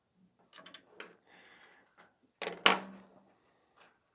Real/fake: real